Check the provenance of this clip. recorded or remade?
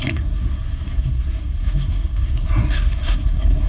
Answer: remade